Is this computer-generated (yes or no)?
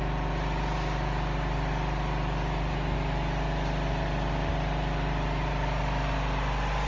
no